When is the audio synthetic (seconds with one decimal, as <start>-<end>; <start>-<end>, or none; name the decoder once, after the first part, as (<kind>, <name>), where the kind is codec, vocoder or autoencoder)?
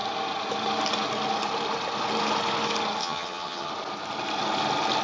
3.0-3.7 (vocoder, HiFi-GAN)